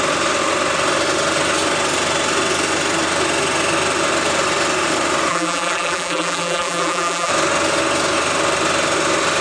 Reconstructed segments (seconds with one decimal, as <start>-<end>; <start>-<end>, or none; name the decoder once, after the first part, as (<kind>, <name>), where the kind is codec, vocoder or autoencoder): 5.3-7.3 (vocoder, BigVGAN v2)